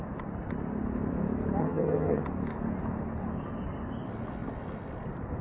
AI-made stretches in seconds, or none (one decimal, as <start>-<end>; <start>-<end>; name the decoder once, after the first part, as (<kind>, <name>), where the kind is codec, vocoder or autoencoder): 1.6-2.2 (vocoder, HiFi-GAN)